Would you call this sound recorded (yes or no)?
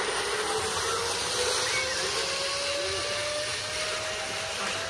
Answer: yes